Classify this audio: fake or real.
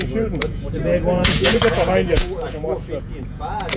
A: fake